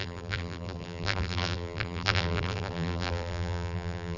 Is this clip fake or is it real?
fake